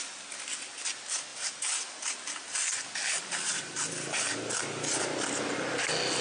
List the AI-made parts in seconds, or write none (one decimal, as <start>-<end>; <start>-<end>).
none